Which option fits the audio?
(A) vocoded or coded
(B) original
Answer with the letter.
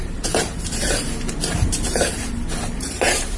A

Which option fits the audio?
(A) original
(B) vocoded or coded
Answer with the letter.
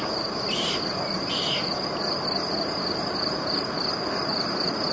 B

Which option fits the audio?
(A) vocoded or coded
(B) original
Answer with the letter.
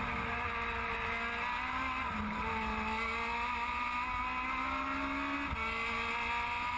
B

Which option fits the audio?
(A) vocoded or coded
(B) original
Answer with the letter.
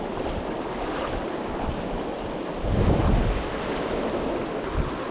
B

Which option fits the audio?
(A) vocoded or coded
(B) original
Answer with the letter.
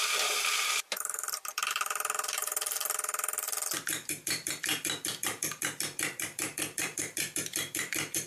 A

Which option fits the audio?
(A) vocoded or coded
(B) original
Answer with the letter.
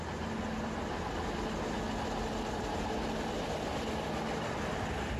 B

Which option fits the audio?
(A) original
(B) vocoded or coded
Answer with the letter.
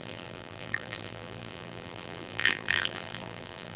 B